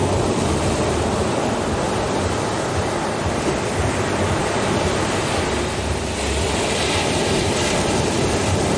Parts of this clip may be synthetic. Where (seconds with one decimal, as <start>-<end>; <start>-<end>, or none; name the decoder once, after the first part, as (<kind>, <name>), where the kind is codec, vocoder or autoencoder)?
none